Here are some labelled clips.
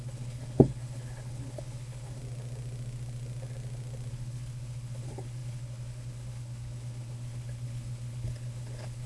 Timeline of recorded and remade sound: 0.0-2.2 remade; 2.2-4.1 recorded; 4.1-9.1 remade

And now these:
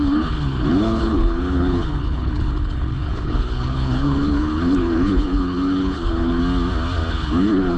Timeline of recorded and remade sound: 0.0-6.4 remade; 6.4-7.1 recorded; 7.1-7.8 remade

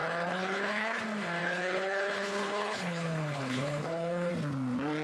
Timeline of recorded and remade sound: 0.0-1.0 remade; 1.0-1.4 recorded; 1.4-4.3 remade; 4.3-5.0 recorded

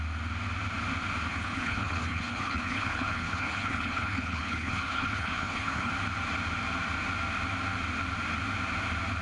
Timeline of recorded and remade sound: 0.0-1.3 recorded; 1.3-5.9 remade; 5.9-9.2 recorded

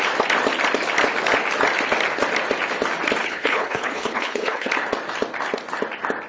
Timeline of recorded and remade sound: 0.0-3.2 recorded; 3.2-4.7 remade; 4.7-6.3 recorded

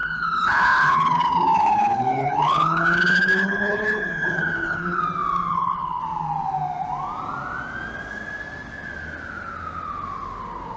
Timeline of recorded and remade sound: 0.0-5.0 remade; 5.0-5.5 recorded; 5.5-6.0 remade; 6.0-10.8 recorded